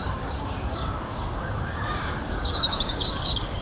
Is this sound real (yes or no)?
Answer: no